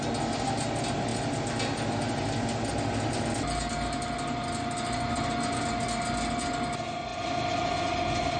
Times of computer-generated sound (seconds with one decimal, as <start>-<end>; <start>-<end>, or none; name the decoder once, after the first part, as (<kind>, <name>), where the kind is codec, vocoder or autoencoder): none